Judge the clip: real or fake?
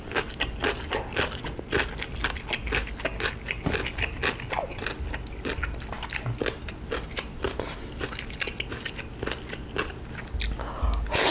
real